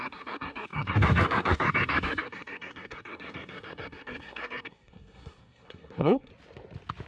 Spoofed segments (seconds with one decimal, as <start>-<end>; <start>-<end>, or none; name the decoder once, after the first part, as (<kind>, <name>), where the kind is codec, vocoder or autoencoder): 0.0-6.3 (codec, SNAC)